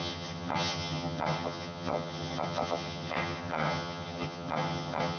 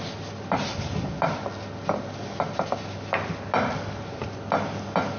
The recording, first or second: second